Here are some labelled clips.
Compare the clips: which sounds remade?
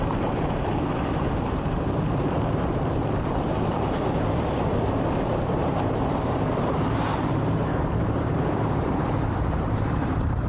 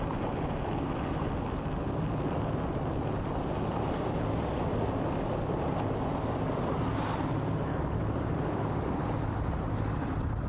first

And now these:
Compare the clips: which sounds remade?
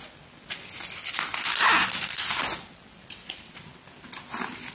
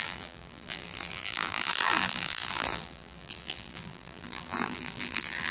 second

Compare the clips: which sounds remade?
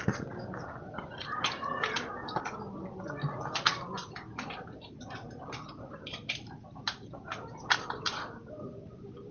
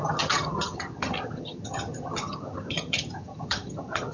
second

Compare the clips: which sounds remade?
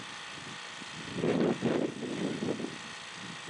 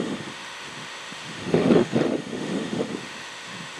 second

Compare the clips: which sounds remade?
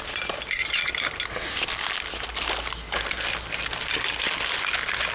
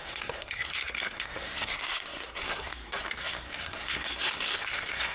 second